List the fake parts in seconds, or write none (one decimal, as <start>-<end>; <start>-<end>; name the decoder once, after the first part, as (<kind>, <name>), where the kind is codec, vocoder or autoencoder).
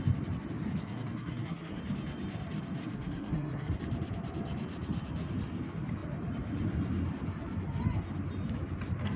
0.8-1.8 (codec, SNAC); 2.8-3.8